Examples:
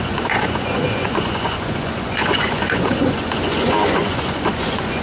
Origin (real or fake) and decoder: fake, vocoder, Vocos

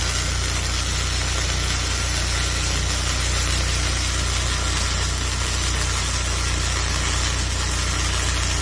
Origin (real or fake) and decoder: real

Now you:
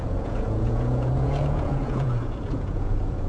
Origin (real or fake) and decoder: fake, vocoder, Vocos